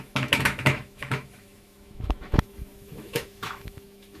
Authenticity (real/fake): fake